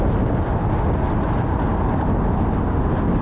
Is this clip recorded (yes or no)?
yes